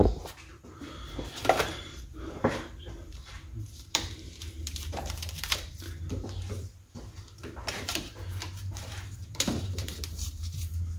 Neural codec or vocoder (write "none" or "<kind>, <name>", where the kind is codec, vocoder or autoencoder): vocoder, BigVGAN v2